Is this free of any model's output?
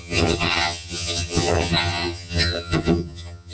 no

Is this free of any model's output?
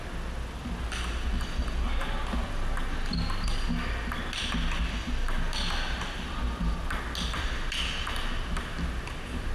yes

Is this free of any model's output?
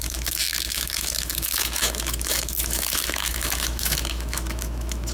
no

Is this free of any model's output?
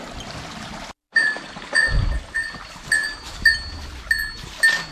yes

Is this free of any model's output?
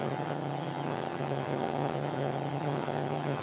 no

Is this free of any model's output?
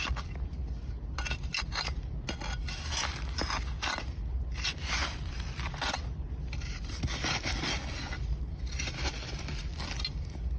yes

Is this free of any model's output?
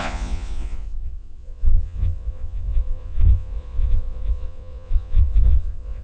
no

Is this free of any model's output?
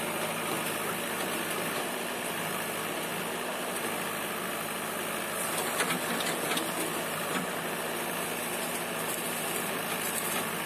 no